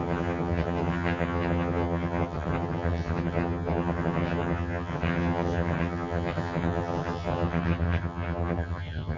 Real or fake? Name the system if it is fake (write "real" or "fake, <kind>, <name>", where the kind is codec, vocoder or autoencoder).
fake, vocoder, HiFi-GAN